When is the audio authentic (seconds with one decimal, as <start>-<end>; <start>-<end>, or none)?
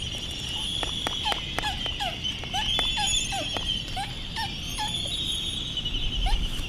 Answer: 0.0-6.7